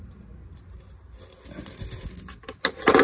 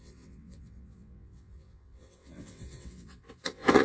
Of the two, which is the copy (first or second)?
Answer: second